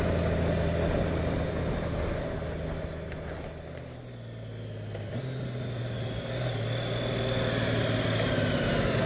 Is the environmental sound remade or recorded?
recorded